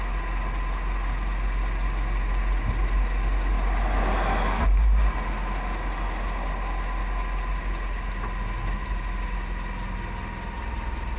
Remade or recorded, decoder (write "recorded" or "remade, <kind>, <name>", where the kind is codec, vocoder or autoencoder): recorded